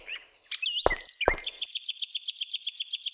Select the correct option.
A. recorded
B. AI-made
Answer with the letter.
A